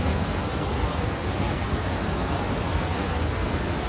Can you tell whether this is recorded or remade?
remade